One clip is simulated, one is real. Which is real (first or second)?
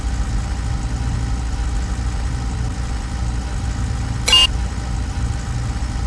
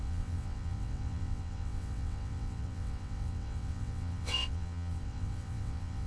first